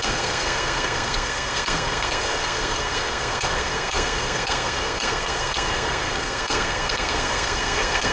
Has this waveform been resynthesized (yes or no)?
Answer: yes